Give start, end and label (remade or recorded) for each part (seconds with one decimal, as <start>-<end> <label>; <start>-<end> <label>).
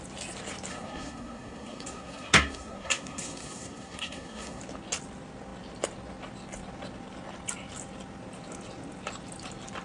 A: 0.0-0.7 recorded; 0.7-4.6 remade; 4.6-9.8 recorded